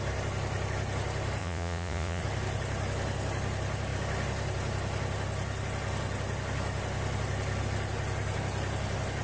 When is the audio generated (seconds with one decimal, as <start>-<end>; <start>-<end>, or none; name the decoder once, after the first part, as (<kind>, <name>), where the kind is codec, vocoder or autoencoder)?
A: 1.4-2.2 (vocoder, Vocos)